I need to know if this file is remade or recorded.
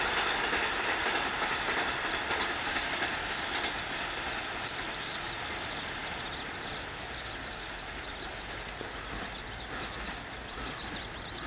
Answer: recorded